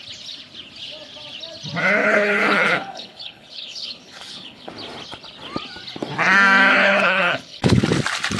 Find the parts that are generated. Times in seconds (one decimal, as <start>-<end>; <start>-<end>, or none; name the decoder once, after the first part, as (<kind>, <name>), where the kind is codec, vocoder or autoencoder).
2.0-4.7 (codec, HILCodec); 6.7-7.8